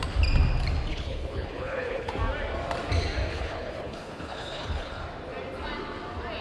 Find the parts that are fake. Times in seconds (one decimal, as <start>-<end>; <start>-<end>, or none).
0.9-2.1; 3.3-5.0